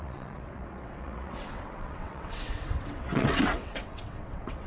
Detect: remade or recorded remade